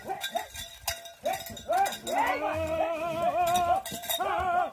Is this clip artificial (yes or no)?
no